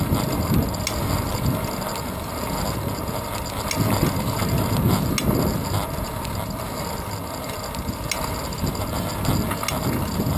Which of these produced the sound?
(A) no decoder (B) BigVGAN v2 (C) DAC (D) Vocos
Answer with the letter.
A